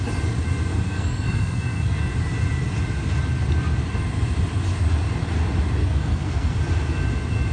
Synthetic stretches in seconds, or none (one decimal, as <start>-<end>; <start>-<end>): 0.7-2.0; 5.8-6.6